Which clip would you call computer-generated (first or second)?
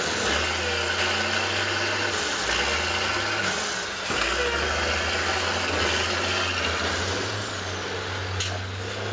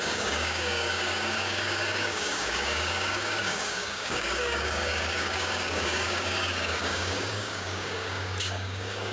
second